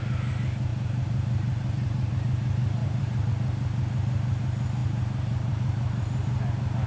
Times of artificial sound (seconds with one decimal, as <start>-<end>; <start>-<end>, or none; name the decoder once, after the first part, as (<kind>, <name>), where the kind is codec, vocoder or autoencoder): 0.7-2.1 (vocoder, BigVGAN v2); 2.8-3.3; 4.8-6.4